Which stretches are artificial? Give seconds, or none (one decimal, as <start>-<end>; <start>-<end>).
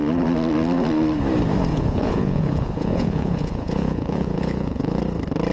1.7-5.0